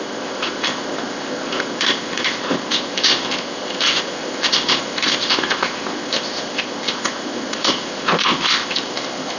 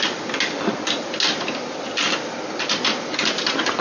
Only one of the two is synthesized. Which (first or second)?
first